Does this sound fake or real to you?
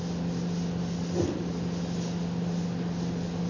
real